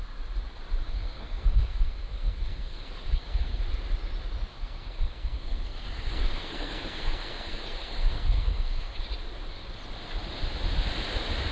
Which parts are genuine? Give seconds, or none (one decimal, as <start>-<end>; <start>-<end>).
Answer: 0.0-0.8; 3.6-4.5; 9.0-11.5